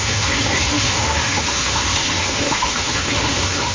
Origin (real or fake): fake